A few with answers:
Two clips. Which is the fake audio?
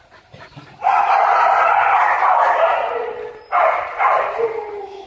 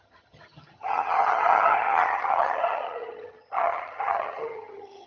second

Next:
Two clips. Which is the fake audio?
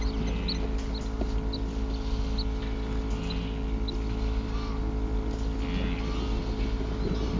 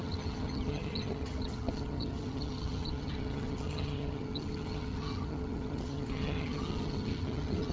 second